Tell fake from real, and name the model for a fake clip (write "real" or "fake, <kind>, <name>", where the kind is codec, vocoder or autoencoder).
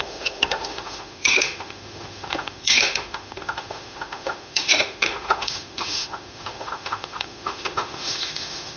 fake, autoencoder, DAC-VAE